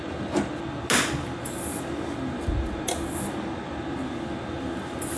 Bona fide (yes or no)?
yes